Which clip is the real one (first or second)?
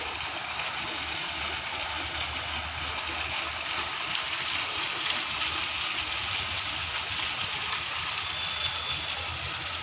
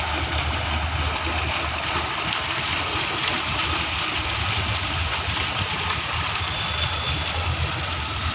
first